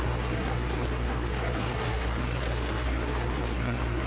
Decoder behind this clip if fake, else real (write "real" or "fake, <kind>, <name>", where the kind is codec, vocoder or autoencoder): fake, codec, SNAC